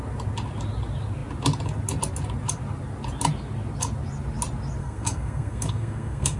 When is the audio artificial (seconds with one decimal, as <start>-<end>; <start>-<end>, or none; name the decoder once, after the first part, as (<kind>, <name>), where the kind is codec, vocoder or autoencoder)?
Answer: 4.8-6.4 (codec, SNAC)